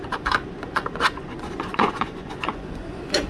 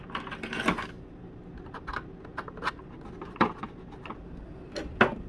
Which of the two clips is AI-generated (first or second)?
first